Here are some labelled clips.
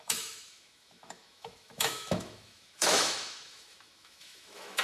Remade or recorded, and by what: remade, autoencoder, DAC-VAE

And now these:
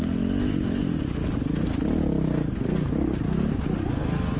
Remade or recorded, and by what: recorded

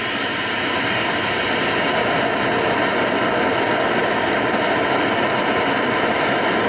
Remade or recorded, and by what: recorded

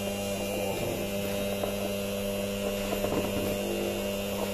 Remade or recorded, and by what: recorded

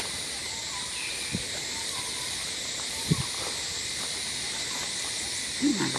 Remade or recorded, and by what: recorded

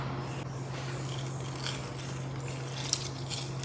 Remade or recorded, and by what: recorded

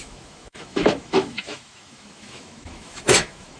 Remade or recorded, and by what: remade, autoencoder, DAC-VAE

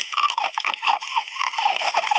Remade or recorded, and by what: remade, autoencoder, DAC-VAE